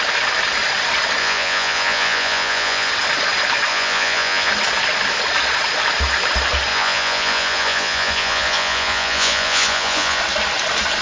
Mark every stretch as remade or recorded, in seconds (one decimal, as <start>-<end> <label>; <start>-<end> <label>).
0.0-1.2 recorded; 1.2-2.9 remade; 2.9-3.7 recorded; 3.7-4.5 remade; 4.5-6.7 recorded; 6.7-10.2 remade; 10.2-11.0 recorded

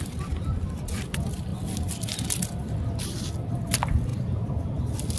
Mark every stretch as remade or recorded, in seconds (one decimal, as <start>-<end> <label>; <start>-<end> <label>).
0.0-5.2 recorded

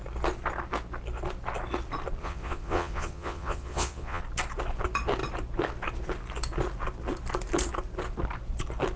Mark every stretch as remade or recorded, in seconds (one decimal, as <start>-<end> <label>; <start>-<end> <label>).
0.0-2.2 recorded; 2.2-4.2 remade; 4.2-9.0 recorded

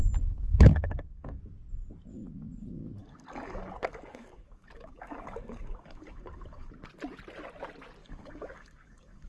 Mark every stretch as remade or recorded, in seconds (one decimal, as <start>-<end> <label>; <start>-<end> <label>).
0.0-0.7 recorded; 0.7-1.4 remade; 1.4-3.0 recorded; 3.0-6.7 remade; 6.7-8.0 recorded; 8.0-9.3 remade

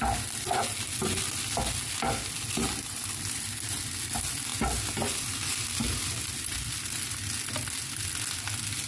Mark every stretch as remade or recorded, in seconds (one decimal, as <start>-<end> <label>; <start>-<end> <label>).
0.0-8.9 recorded